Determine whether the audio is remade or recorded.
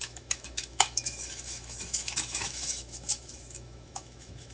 remade